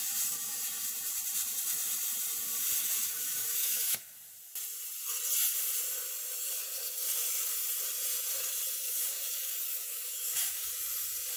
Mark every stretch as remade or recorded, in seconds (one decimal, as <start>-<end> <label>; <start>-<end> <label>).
0.0-2.8 recorded; 2.8-4.1 remade; 4.1-8.8 recorded; 8.8-10.7 remade; 10.7-11.4 recorded